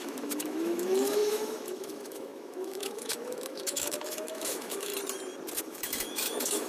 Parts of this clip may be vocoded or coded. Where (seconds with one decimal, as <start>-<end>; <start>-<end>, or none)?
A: 0.0-4.9; 5.6-6.7